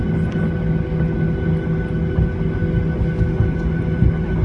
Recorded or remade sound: recorded